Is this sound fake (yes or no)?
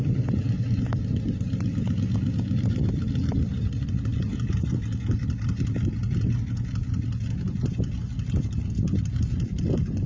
yes